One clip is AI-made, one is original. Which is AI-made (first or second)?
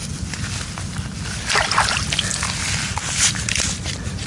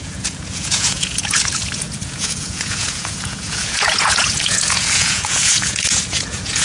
second